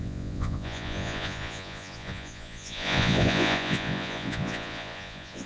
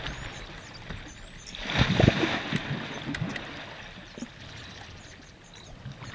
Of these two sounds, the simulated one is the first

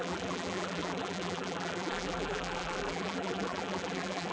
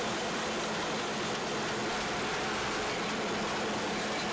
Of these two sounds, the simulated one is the first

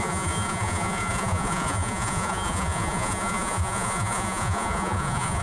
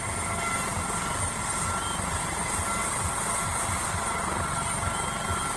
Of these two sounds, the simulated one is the first